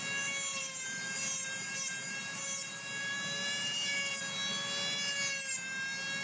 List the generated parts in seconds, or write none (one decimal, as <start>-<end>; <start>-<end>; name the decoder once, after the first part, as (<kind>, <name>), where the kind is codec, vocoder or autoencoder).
0.5-4.2 (vocoder, BigVGAN v2)